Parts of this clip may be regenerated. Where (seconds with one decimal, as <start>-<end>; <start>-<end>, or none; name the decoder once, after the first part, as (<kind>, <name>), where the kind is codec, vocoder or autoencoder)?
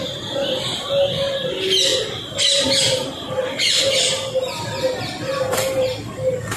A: none